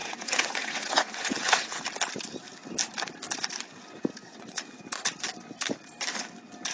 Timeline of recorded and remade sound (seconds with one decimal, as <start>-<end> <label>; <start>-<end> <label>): 0.0-1.8 remade; 1.8-4.2 recorded; 4.2-4.8 remade; 4.8-6.7 recorded